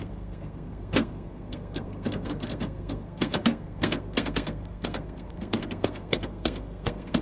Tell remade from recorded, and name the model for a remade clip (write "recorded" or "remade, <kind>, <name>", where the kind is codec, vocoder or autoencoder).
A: remade, codec, SNAC